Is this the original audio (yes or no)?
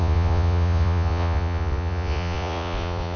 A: no